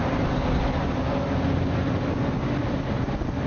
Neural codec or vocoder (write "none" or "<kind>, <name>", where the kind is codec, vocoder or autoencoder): none